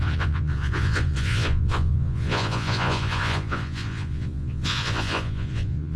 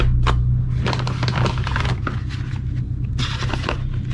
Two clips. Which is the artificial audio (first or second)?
first